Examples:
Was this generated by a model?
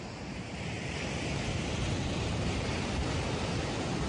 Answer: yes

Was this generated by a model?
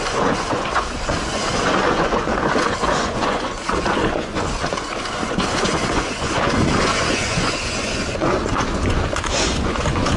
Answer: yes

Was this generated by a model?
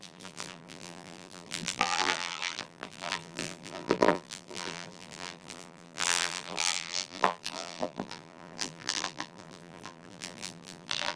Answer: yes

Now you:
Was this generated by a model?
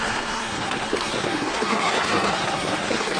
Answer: yes